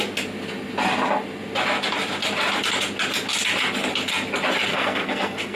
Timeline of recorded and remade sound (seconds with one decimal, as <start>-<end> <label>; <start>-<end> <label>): 0.0-4.7 recorded; 4.7-5.6 remade